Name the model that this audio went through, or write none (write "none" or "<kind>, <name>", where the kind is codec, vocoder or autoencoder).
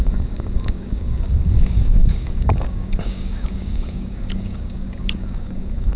codec, DAC